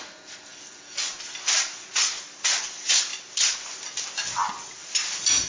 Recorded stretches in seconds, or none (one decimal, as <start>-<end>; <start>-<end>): 0.0-5.5